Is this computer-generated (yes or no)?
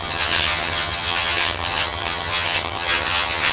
yes